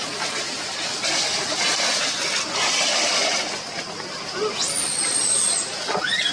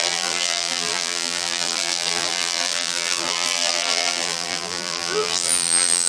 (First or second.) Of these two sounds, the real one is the first